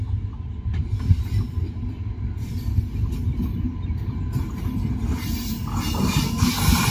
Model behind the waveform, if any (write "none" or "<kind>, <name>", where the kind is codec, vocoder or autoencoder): none